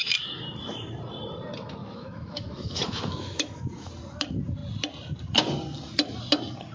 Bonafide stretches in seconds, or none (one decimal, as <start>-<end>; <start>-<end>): 0.0-1.8; 3.9-6.7